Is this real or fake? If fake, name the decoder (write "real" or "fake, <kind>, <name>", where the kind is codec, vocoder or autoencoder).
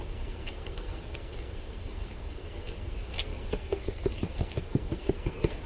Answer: fake, codec, SNAC